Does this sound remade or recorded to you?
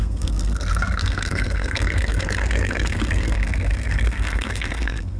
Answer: remade